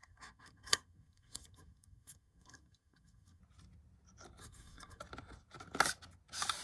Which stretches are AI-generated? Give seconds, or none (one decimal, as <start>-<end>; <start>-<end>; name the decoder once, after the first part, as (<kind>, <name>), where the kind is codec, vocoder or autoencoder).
0.0-3.4 (codec, SNAC); 4.4-5.0